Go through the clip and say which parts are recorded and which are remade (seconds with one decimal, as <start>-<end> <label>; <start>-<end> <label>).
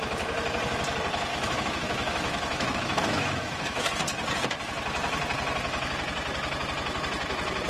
0.0-1.3 recorded; 1.3-3.9 remade; 3.9-7.7 recorded